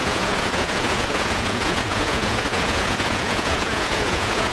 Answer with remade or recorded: remade